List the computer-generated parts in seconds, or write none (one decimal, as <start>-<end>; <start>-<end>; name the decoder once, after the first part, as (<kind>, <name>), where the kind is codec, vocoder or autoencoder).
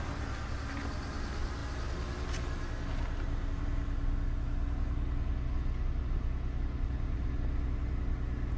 none